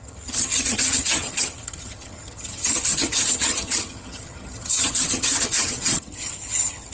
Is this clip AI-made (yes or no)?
yes